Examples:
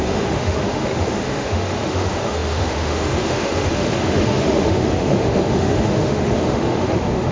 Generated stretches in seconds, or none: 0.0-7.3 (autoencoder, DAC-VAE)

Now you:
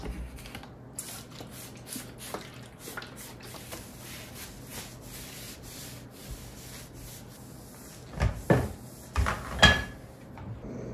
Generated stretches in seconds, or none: none